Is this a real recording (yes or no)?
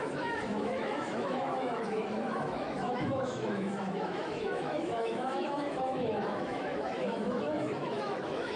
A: no